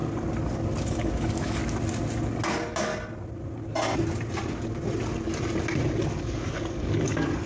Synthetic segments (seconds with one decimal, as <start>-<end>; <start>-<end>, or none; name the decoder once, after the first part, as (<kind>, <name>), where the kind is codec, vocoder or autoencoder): 0.8-1.6 (codec, DAC); 2.5-2.9; 6.1-7.5